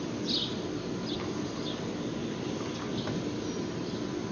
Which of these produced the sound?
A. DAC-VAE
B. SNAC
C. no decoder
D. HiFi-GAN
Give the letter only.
C